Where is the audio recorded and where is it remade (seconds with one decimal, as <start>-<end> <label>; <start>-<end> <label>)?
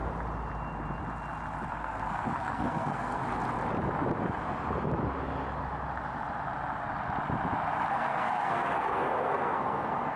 0.0-1.7 recorded; 1.7-3.2 remade; 3.2-7.9 recorded; 7.9-10.2 remade